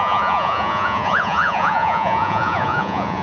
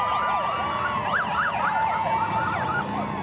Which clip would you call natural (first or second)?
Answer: second